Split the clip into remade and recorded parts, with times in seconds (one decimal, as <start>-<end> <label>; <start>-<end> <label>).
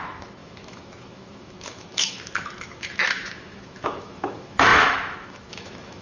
0.0-6.0 remade